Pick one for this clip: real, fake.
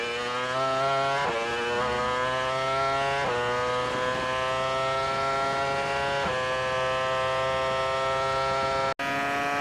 real